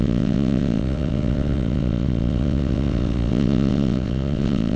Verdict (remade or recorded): remade